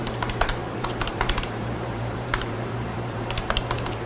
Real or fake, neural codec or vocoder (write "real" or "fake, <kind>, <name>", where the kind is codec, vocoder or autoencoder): fake, vocoder, BigVGAN v2